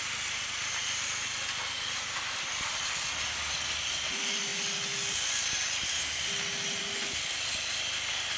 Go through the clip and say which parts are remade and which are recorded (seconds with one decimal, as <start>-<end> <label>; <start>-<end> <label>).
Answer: 0.0-8.4 recorded